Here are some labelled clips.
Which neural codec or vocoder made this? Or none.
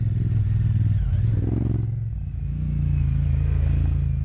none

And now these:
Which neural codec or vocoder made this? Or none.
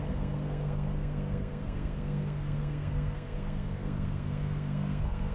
codec, SNAC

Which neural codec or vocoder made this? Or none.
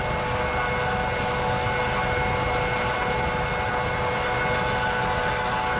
none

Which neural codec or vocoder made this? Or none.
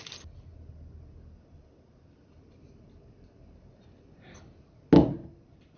none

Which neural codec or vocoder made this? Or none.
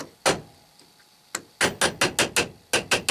none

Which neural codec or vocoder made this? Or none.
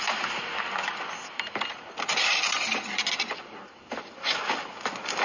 none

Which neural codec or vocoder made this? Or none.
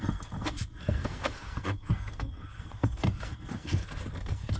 codec, SNAC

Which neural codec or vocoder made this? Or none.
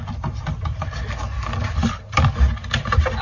none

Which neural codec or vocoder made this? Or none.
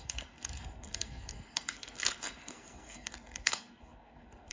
codec, SNAC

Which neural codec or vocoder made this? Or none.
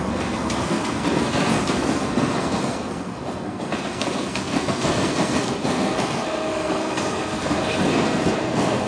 codec, SNAC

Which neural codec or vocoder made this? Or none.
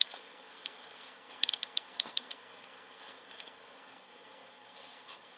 codec, SNAC